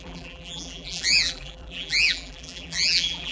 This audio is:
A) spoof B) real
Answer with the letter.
A